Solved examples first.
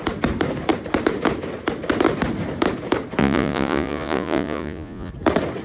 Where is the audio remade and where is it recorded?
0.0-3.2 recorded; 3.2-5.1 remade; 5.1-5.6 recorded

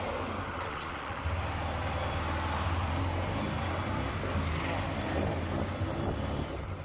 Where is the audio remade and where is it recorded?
0.0-0.5 recorded; 0.5-1.2 remade; 1.2-6.8 recorded

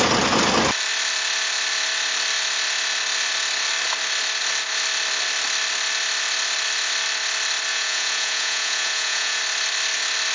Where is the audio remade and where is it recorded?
0.0-7.7 recorded; 7.7-9.4 remade; 9.4-10.3 recorded

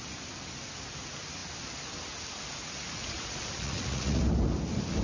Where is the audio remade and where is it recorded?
0.0-3.0 recorded; 3.0-4.2 remade; 4.2-5.0 recorded